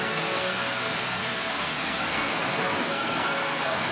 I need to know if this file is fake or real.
fake